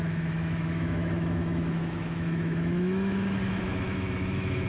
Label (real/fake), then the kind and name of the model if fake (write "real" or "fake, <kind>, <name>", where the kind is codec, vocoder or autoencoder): fake, autoencoder, DAC-VAE